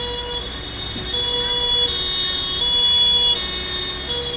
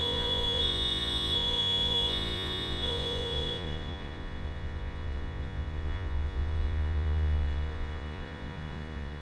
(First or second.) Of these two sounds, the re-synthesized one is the second